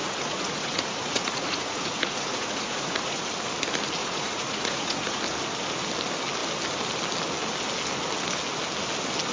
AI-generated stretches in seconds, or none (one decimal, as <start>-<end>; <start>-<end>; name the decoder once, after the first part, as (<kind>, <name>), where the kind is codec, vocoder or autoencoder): 0.0-3.2 (vocoder, Vocos); 4.0-5.2